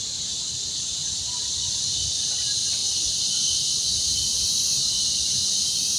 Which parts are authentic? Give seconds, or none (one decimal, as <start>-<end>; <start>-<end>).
2.8-4.0

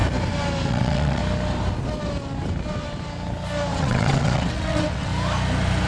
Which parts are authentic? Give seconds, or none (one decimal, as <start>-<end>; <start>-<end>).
0.0-0.7; 1.2-3.7; 5.1-5.9